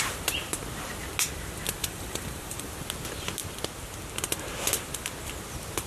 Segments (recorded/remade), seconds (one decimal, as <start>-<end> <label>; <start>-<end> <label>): 0.0-1.8 recorded; 1.8-2.7 remade; 2.7-5.9 recorded